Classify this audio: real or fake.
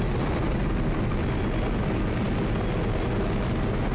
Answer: real